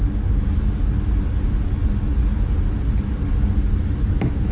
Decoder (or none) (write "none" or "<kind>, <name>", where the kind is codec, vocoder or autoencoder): none